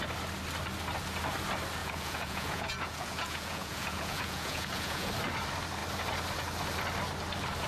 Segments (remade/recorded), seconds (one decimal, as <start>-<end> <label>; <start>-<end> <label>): 0.0-1.8 recorded; 1.8-5.1 remade; 5.1-7.7 recorded